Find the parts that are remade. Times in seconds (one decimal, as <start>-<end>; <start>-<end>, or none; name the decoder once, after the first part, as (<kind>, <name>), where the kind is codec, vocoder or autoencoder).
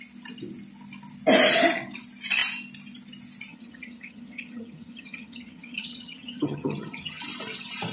3.5-7.2 (vocoder, HiFi-GAN)